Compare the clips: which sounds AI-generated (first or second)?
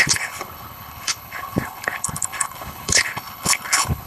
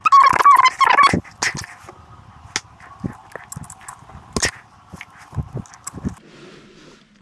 first